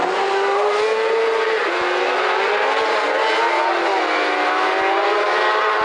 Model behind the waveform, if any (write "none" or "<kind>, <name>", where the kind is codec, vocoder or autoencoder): none